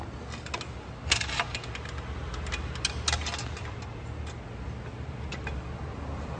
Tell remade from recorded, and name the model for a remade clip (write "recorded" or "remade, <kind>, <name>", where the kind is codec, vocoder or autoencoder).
recorded